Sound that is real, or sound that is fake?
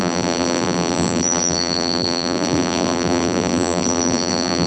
fake